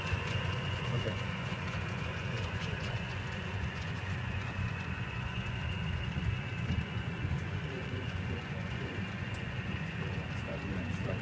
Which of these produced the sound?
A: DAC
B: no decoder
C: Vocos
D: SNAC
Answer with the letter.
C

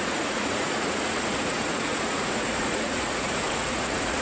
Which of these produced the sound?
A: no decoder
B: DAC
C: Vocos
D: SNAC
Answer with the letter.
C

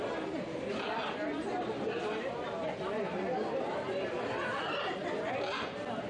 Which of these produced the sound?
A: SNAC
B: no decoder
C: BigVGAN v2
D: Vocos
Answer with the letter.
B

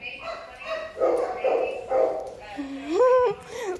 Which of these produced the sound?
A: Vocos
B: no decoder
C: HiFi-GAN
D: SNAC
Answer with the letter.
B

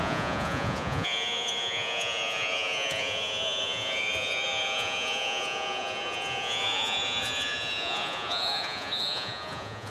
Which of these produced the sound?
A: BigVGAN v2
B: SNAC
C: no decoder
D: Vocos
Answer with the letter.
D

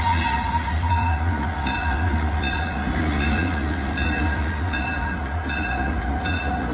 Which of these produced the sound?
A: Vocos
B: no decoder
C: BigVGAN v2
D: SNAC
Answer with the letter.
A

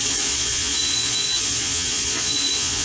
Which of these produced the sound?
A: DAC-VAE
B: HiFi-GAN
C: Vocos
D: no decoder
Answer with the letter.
C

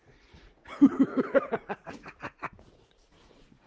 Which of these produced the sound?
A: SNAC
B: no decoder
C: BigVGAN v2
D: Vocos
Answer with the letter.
D